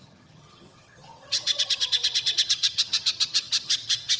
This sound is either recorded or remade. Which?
remade